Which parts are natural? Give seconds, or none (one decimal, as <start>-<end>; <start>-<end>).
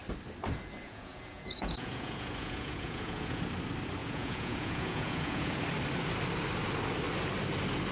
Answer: 0.0-0.8; 3.4-4.0; 5.6-7.9